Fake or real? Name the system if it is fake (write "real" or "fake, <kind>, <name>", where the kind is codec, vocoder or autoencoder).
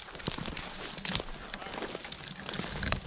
real